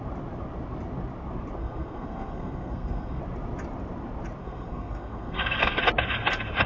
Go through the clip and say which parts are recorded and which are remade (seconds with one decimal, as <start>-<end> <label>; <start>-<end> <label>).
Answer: 0.0-1.6 recorded; 1.6-3.2 remade; 3.2-4.4 recorded; 4.4-5.8 remade; 5.8-6.7 recorded